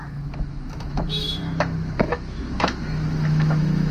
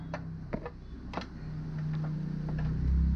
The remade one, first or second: first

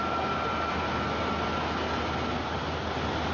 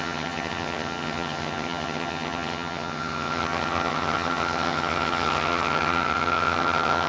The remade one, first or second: second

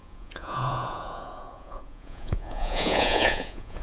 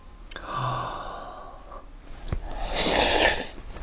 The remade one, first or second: first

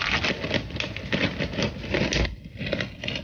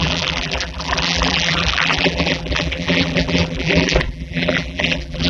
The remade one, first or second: second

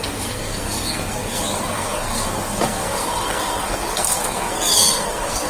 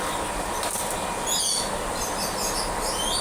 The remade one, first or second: first